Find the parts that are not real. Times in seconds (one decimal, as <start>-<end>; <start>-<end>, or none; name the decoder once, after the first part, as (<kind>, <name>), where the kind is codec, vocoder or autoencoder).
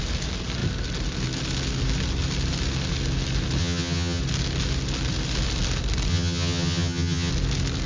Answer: 3.6-4.2 (vocoder, HiFi-GAN); 6.1-7.3